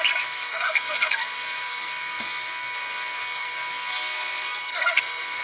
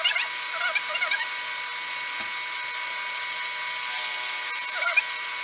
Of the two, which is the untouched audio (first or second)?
second